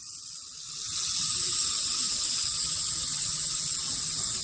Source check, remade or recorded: recorded